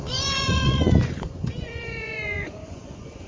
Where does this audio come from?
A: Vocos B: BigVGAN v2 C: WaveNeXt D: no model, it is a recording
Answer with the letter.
A